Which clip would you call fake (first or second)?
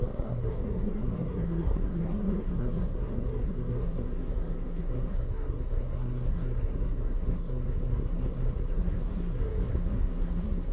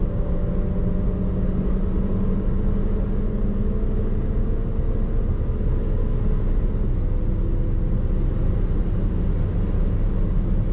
first